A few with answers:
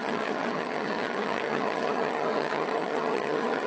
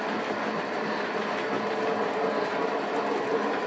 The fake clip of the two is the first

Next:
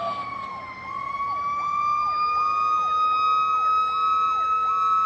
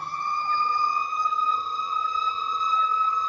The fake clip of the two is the second